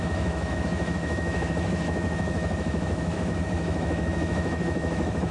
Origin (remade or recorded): remade